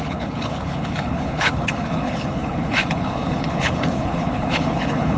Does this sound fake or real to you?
fake